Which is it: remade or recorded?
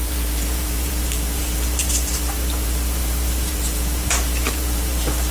remade